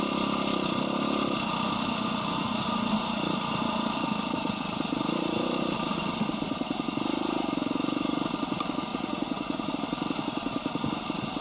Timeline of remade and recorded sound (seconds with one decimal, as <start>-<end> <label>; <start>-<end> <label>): 0.0-8.9 recorded; 8.9-9.7 remade; 9.7-11.4 recorded